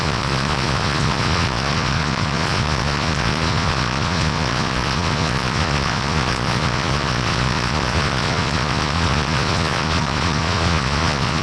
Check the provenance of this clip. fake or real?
fake